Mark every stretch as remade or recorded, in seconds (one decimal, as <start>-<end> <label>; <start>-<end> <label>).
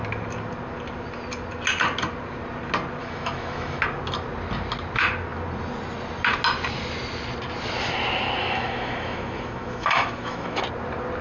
0.0-3.0 recorded; 3.0-3.8 remade; 3.8-8.4 recorded; 8.4-10.6 remade; 10.6-11.2 recorded